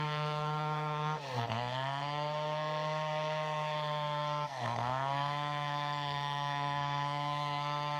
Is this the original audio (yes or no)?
no